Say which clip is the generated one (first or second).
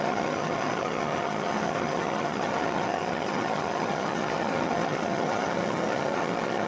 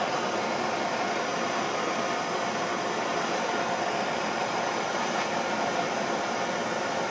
first